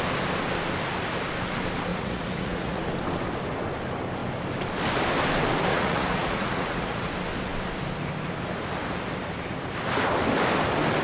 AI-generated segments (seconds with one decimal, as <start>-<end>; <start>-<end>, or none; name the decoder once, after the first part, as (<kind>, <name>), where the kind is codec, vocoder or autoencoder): 1.9-2.8 (vocoder, Vocos); 5.7-7.1